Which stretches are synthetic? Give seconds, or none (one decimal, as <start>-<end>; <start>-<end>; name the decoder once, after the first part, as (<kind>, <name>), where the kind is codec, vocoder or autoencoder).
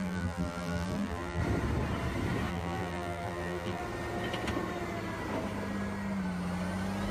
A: 0.0-1.4 (vocoder, BigVGAN v2); 2.5-3.8